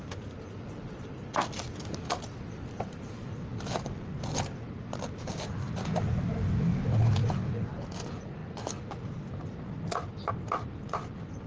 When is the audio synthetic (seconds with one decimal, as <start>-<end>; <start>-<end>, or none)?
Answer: none